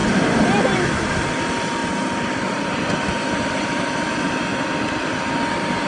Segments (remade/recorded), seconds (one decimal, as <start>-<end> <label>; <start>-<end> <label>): 0.0-1.8 recorded; 1.8-4.0 remade; 4.0-5.9 recorded